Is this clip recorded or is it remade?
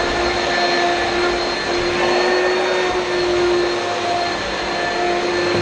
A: recorded